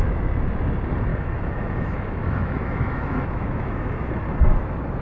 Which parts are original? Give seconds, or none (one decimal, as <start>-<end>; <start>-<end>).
0.0-1.1; 4.1-5.0